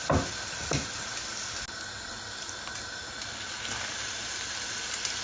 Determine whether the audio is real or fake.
real